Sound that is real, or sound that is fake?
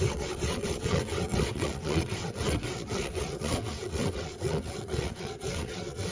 fake